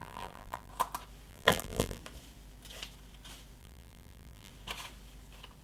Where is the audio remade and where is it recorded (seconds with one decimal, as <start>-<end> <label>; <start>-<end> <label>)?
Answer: 0.0-0.7 remade; 0.7-1.3 recorded; 1.3-2.0 remade; 2.0-3.6 recorded; 3.6-4.5 remade; 4.5-5.6 recorded